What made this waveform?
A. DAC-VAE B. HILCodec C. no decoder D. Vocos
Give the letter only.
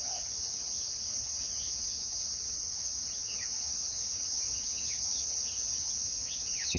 B